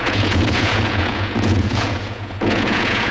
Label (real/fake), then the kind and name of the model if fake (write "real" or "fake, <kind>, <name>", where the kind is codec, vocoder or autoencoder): fake, vocoder, Vocos